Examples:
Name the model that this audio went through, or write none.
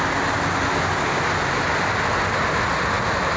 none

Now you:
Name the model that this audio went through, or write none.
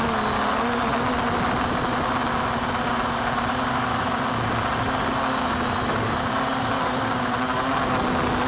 none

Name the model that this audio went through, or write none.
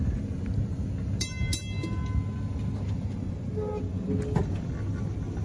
none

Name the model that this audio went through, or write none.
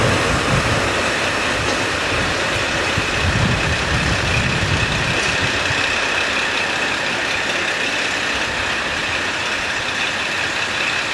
none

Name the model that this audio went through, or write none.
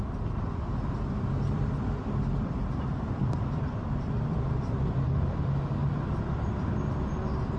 vocoder, BigVGAN v2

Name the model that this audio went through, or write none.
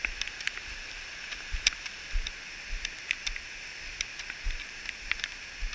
none